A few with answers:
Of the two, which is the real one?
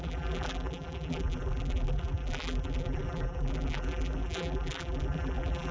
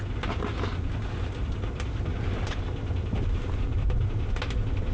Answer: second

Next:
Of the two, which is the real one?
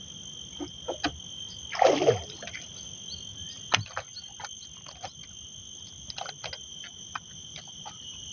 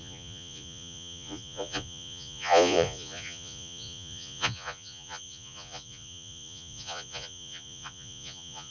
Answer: first